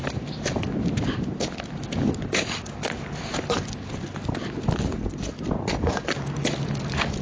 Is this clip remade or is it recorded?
recorded